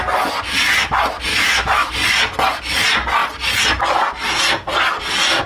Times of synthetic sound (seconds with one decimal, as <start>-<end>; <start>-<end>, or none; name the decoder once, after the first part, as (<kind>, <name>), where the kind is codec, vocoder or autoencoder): 1.3-1.9 (autoencoder, DAC-VAE)